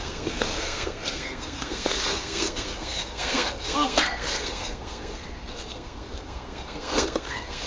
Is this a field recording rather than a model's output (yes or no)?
no